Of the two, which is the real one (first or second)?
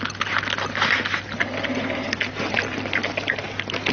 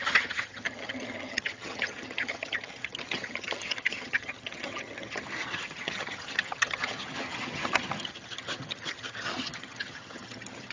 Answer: first